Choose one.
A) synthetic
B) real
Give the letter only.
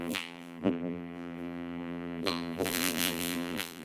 A